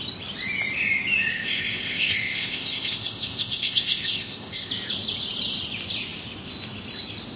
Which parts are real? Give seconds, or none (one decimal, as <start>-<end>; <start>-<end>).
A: 0.0-1.3; 4.7-7.4